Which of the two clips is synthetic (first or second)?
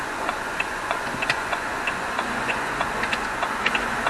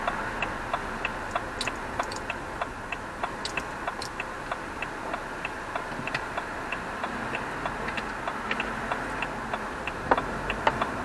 first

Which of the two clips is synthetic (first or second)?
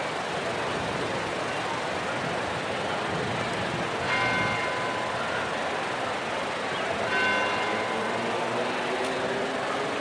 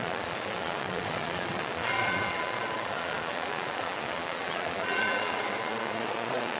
second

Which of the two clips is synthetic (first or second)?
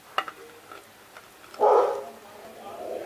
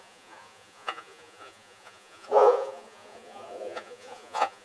second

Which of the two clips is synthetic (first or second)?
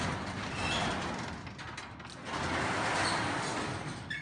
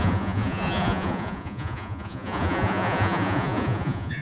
second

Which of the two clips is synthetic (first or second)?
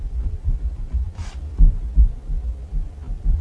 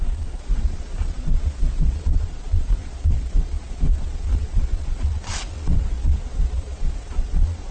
second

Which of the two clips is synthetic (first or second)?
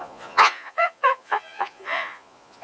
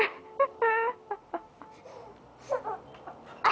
first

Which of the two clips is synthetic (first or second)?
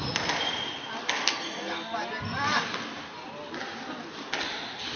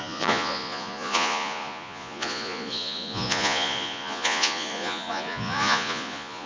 second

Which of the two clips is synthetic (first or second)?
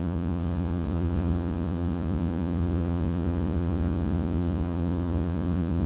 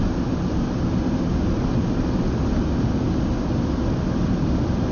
first